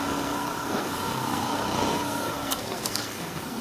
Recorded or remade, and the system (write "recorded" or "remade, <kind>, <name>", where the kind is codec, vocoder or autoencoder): remade, codec, SNAC